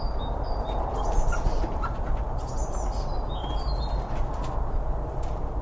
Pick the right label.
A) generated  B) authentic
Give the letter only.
B